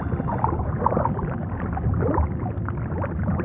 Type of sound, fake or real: real